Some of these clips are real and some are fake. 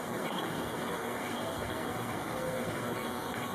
fake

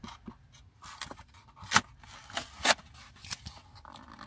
real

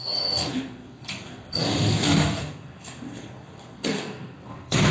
fake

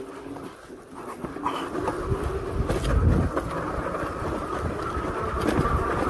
real